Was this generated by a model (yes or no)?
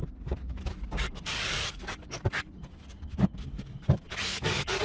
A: yes